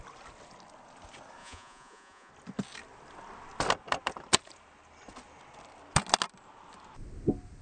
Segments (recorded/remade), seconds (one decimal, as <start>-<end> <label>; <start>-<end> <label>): 0.0-1.4 recorded; 1.4-2.3 remade; 2.3-7.6 recorded